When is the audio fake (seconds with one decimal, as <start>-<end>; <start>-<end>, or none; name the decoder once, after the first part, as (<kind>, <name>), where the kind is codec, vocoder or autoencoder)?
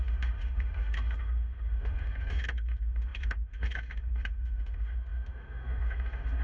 0.0-6.4 (autoencoder, DAC-VAE)